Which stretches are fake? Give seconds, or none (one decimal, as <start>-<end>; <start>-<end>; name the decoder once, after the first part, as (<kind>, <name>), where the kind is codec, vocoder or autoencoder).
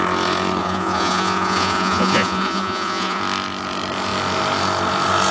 0.6-3.2 (vocoder, Vocos)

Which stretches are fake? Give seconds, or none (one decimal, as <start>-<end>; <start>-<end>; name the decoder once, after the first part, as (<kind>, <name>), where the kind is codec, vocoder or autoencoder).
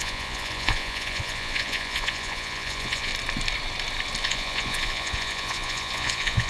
0.0-3.1 (vocoder, Vocos); 4.2-6.5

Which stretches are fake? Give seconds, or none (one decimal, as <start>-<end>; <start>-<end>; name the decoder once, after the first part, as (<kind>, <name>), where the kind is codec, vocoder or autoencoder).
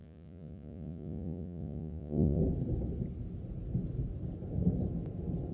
0.0-2.4 (vocoder, Vocos)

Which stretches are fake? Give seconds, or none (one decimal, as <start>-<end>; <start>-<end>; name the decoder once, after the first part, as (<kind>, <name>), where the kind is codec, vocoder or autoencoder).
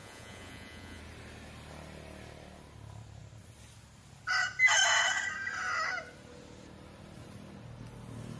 0.0-1.0 (vocoder, Vocos)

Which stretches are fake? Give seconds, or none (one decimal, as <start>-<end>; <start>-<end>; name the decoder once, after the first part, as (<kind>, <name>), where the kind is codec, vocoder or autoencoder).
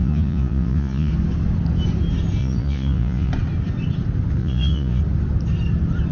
0.0-1.1 (vocoder, Vocos); 2.4-3.3; 4.4-5.0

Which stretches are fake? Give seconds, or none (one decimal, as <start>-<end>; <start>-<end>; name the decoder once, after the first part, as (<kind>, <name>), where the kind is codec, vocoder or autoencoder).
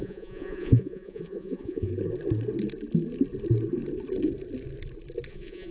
0.0-1.9 (vocoder, Vocos); 5.3-5.7